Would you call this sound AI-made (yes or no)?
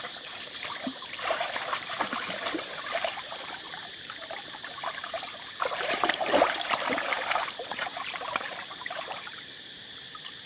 yes